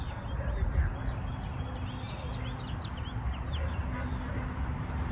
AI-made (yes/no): no